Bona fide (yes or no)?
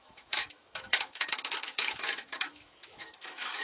no